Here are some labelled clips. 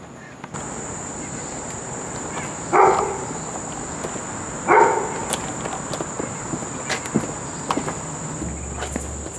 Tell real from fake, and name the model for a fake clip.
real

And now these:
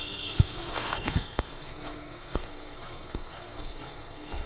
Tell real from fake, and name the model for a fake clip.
fake, codec, SNAC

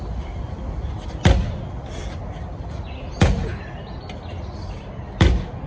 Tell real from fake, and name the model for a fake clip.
real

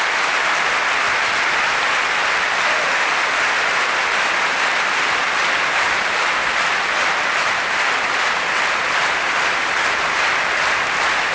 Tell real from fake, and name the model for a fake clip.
real